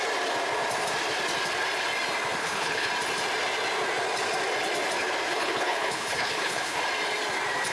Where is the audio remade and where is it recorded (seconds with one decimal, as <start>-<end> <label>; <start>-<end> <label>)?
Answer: 0.0-2.4 recorded; 2.4-2.9 remade; 2.9-5.3 recorded; 5.3-6.8 remade; 6.8-7.7 recorded